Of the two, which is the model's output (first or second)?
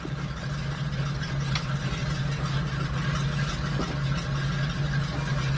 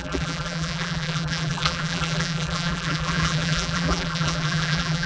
second